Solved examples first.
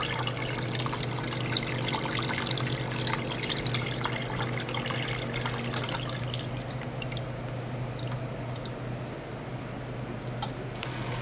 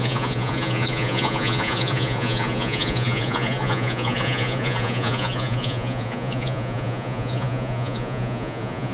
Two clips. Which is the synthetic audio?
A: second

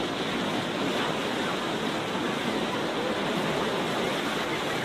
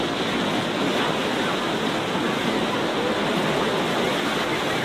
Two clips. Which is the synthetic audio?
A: first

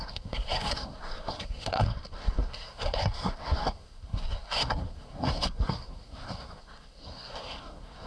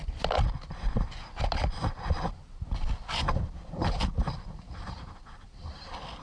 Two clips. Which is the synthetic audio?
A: first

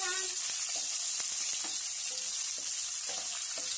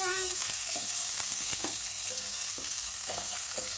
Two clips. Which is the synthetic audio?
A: second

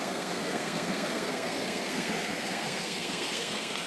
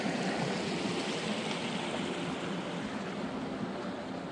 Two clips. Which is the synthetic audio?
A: first